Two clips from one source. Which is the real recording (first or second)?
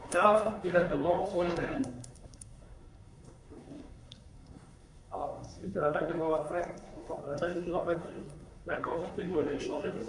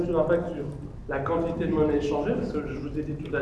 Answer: second